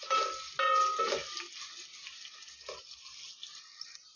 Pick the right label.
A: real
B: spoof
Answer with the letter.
A